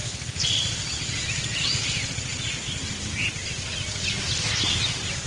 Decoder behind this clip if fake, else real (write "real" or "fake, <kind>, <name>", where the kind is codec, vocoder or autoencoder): real